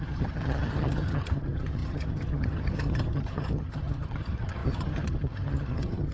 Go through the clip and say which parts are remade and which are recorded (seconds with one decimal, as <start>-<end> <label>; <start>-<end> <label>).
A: 0.0-6.1 remade